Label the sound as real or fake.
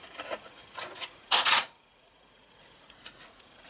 fake